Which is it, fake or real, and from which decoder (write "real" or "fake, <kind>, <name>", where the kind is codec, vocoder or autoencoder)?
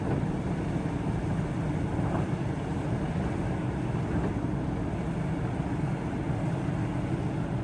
real